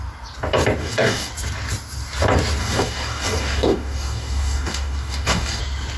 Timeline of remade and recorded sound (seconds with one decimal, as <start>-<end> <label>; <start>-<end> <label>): 0.0-0.8 recorded; 0.8-1.3 remade; 1.3-2.6 recorded; 2.6-5.6 remade; 5.6-6.0 recorded